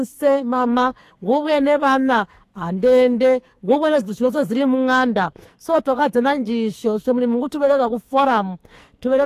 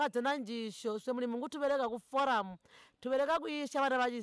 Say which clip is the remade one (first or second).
first